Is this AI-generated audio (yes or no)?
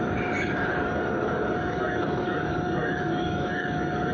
yes